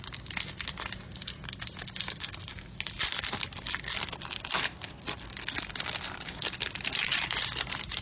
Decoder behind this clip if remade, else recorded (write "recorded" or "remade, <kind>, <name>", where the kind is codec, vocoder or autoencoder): recorded